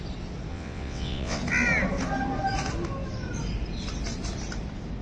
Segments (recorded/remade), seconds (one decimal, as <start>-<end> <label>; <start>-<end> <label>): 0.0-0.5 recorded; 0.5-1.4 remade; 1.4-5.0 recorded